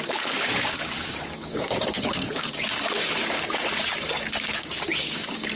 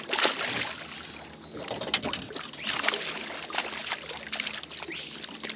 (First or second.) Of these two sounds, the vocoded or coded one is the first